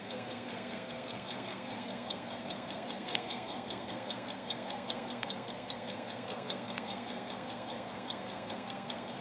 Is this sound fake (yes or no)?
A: yes